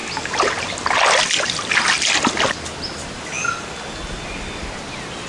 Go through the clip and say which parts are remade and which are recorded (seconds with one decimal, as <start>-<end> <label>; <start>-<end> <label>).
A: 0.0-5.3 recorded